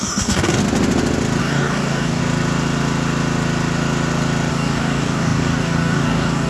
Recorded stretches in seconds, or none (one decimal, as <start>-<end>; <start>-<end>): 0.6-1.4; 2.2-4.5